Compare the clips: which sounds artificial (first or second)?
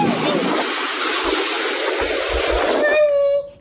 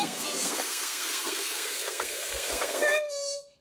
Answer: second